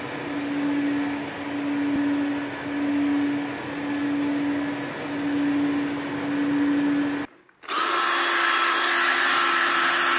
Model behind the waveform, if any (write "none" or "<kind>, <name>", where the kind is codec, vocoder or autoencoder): none